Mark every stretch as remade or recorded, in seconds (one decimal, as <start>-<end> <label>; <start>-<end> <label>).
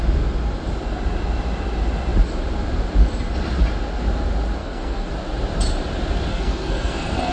0.0-4.6 recorded; 4.6-5.1 remade; 5.1-6.3 recorded; 6.3-7.3 remade